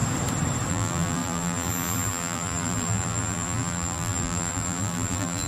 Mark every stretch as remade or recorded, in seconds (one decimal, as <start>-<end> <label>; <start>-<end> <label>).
0.0-0.7 recorded; 0.7-5.5 remade